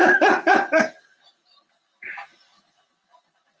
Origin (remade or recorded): remade